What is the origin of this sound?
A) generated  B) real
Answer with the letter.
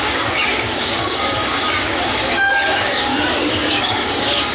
A